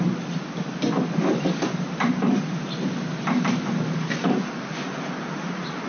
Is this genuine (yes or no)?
yes